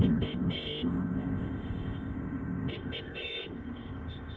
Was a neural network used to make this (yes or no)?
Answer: yes